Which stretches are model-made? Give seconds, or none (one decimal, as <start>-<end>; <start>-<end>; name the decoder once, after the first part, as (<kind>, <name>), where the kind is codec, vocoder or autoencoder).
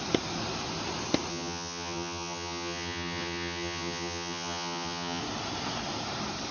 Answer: 1.3-5.2 (vocoder, HiFi-GAN)